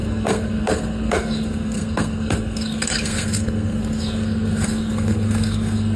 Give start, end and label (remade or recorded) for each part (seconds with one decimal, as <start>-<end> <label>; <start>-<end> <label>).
0.0-6.0 remade